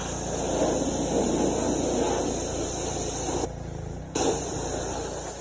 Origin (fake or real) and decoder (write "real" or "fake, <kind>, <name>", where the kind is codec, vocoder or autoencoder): real